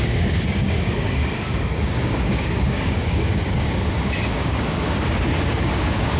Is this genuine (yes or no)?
no